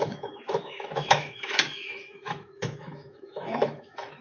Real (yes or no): no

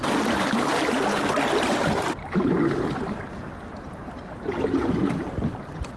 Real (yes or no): yes